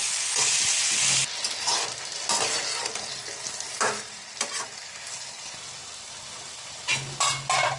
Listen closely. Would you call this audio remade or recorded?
recorded